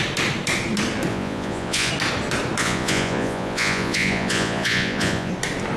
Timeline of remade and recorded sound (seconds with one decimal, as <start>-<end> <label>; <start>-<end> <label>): 0.0-1.1 recorded; 1.1-1.9 remade; 1.9-2.6 recorded; 2.6-5.3 remade; 5.3-5.8 recorded